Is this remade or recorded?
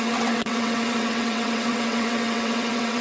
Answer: remade